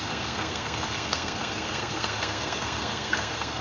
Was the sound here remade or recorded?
remade